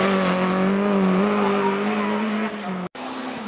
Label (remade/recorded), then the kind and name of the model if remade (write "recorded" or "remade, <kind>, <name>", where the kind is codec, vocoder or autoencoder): recorded